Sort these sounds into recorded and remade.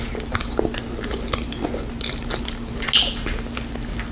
recorded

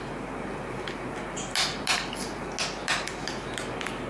recorded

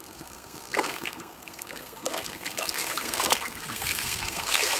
remade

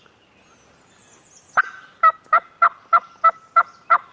recorded